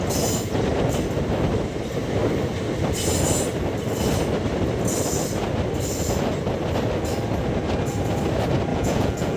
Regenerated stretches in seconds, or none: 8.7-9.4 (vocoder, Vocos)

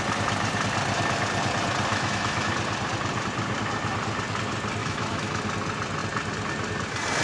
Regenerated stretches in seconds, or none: 1.9-2.5 (autoencoder, DAC-VAE); 4.8-5.4